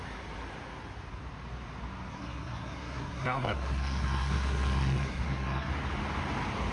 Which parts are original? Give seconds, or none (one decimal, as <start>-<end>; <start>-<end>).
0.0-2.1; 5.7-6.7